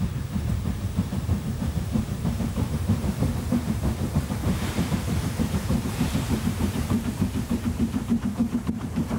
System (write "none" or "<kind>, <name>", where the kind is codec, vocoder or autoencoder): vocoder, BigVGAN v2